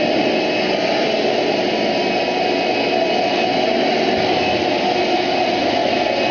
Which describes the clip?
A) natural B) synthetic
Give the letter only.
A